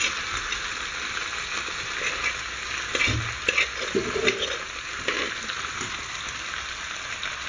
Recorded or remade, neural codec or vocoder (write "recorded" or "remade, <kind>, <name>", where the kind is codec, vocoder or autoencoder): recorded